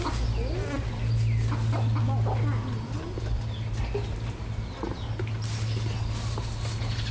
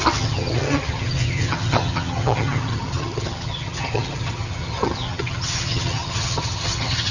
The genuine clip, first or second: first